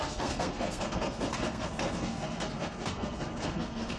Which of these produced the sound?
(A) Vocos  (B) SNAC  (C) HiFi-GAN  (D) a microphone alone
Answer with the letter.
B